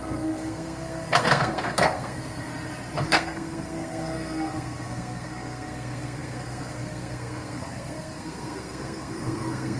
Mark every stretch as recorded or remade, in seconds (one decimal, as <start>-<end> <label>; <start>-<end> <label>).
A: 0.0-2.5 remade; 2.5-3.1 recorded; 3.1-9.8 remade